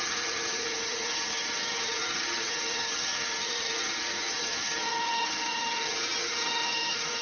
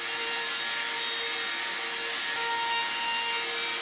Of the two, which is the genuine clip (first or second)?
second